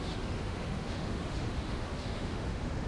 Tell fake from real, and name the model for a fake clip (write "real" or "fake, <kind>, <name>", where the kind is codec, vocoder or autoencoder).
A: fake, autoencoder, DAC-VAE